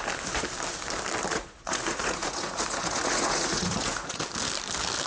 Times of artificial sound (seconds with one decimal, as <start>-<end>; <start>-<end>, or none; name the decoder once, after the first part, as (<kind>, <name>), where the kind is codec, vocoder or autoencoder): 1.3-4.2 (vocoder, Vocos)